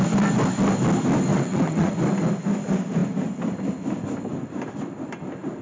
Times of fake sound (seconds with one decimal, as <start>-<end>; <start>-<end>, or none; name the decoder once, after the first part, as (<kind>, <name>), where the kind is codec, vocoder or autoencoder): 1.3-1.9 (vocoder, WaveNeXt)